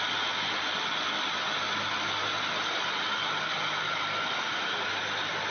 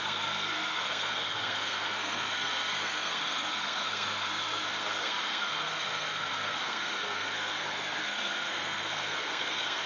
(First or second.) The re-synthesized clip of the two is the second